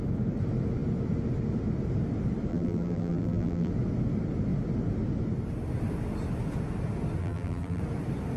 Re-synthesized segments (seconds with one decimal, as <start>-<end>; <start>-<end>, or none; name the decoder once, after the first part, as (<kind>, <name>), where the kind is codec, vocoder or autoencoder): 2.5-3.7 (vocoder, BigVGAN v2); 7.2-7.8